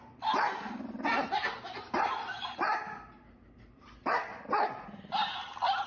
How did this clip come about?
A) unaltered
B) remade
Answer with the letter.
A